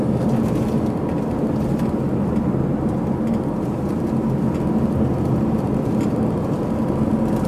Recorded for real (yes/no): yes